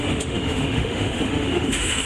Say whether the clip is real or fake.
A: fake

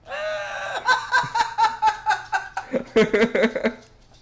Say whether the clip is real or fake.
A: real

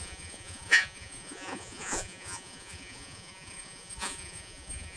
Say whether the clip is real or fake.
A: fake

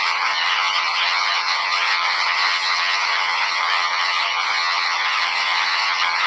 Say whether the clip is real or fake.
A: fake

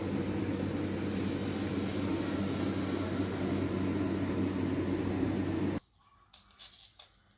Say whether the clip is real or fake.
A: real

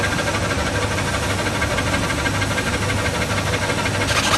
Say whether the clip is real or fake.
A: real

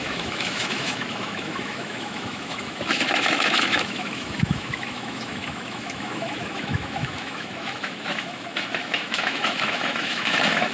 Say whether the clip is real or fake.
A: fake